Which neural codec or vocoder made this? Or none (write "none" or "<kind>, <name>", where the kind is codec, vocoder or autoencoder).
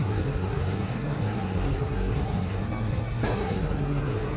codec, SNAC